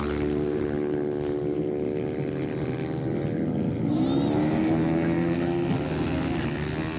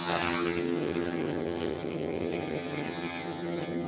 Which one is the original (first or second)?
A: first